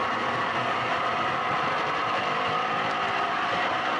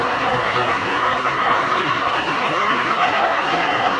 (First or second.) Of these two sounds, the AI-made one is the second